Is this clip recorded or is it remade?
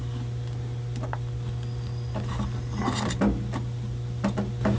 recorded